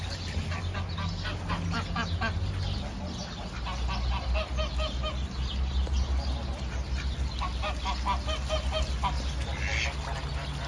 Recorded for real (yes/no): yes